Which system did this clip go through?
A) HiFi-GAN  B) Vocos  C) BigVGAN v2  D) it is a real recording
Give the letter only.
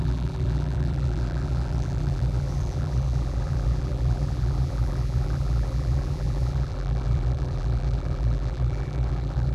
C